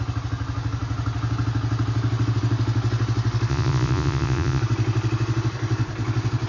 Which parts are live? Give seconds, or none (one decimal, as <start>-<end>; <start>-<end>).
0.0-3.5; 4.6-6.5